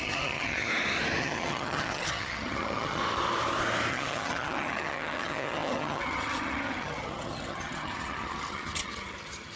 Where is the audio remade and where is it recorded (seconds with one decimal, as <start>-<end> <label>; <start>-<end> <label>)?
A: 0.0-0.7 remade; 0.7-1.2 recorded; 1.2-3.0 remade; 3.0-3.9 recorded; 3.9-9.6 remade